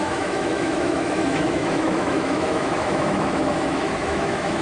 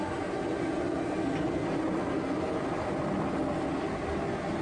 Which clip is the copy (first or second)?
first